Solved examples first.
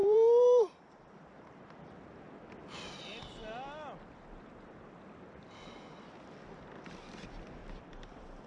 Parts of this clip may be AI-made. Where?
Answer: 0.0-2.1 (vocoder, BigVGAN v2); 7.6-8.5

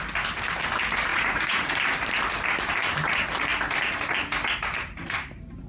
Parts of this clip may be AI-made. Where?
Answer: 1.1-1.7 (vocoder, Vocos)

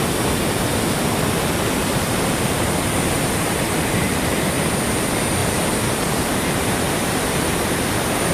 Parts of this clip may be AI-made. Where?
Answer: 1.8-4.6 (vocoder, BigVGAN v2); 5.4-6.3

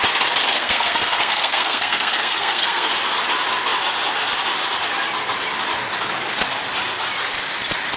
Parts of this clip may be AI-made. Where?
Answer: 0.5-2.9 (codec, SNAC)

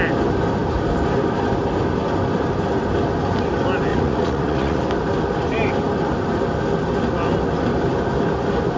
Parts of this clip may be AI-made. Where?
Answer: 3.9-4.8 (vocoder, Vocos)

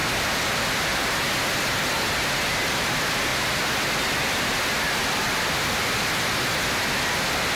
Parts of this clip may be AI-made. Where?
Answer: none

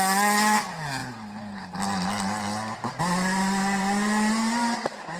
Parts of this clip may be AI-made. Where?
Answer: none

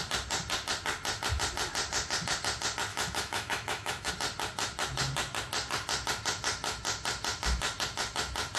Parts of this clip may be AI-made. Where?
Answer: 2.9-4.1 (autoencoder, DAC-VAE)